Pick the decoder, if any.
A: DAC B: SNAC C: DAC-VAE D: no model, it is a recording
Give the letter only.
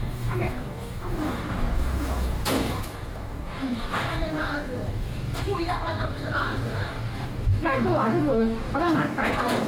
A